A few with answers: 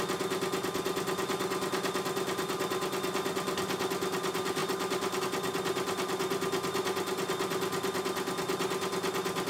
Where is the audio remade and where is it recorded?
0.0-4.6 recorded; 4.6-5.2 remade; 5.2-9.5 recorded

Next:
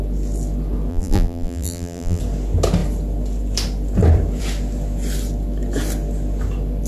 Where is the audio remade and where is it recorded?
0.0-0.9 recorded; 0.9-2.2 remade; 2.2-6.9 recorded

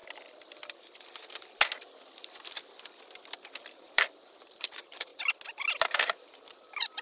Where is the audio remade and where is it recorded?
0.0-3.6 recorded; 3.6-5.1 remade; 5.1-5.8 recorded; 5.8-7.0 remade

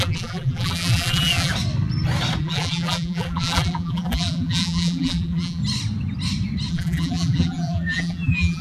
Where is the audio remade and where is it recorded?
0.0-1.5 remade; 1.5-2.4 recorded; 2.4-5.6 remade; 5.6-6.7 recorded; 6.7-8.6 remade

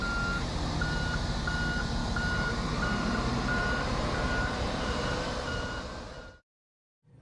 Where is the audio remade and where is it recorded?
0.0-2.0 recorded; 2.0-6.3 remade; 6.3-7.2 recorded